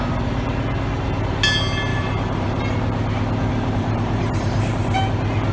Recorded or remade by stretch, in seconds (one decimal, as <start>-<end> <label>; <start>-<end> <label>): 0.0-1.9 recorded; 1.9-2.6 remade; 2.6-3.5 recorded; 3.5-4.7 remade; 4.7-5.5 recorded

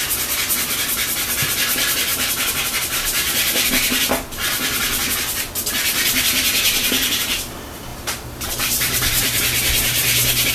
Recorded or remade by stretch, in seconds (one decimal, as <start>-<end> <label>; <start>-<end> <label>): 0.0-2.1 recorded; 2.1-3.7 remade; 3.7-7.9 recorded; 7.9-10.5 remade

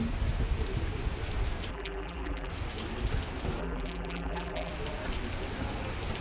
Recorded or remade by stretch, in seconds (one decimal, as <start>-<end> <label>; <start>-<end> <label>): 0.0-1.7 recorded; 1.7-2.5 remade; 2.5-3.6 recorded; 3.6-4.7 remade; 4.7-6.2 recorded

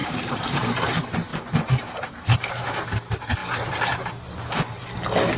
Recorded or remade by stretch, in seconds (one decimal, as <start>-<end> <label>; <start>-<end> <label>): 0.0-0.8 remade; 0.8-1.3 recorded; 1.3-2.5 remade; 2.5-5.4 recorded

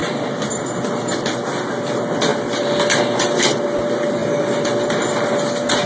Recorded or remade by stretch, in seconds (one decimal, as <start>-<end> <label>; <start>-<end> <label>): 0.0-5.9 recorded